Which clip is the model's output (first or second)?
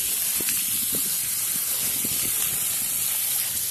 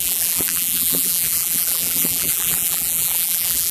second